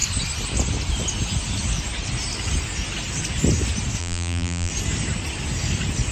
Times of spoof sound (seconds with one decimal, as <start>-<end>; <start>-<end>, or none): 4.0-4.7